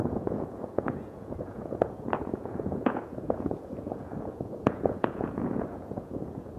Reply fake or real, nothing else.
fake